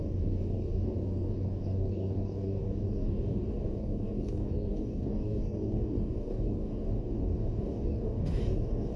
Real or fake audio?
fake